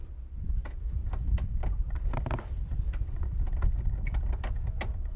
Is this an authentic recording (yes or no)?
yes